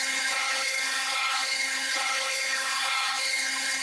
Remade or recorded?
remade